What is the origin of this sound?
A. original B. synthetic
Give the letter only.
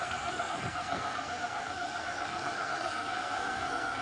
B